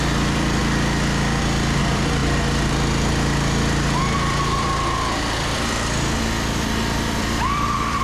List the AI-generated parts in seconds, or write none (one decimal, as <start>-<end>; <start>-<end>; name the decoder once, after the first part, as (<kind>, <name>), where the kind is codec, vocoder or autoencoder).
0.0-0.6 (vocoder, BigVGAN v2); 1.4-8.0